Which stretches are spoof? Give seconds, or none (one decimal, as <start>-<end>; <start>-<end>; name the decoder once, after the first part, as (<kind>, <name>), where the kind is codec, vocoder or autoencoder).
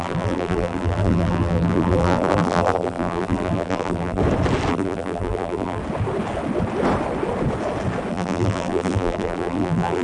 0.0-4.2 (vocoder, BigVGAN v2); 4.7-5.8; 8.1-10.0